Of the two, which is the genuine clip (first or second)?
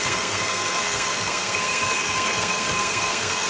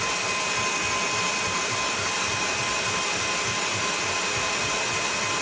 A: second